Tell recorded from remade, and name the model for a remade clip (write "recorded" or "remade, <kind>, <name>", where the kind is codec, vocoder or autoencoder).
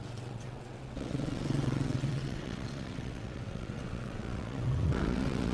remade, vocoder, WaveNeXt